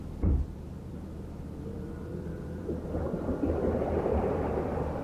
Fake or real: fake